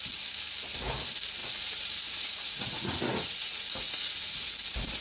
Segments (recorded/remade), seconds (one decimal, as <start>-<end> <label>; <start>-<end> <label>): 0.0-1.4 recorded; 1.4-4.4 remade; 4.4-5.0 recorded